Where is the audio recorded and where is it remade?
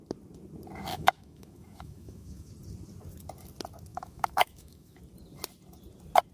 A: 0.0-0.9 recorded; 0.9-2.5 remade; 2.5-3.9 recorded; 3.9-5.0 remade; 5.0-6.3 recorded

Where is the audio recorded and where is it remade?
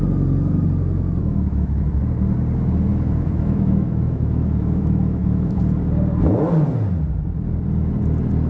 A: 0.0-1.2 recorded; 1.2-2.0 remade; 2.0-2.9 recorded; 2.9-5.6 remade; 5.6-8.5 recorded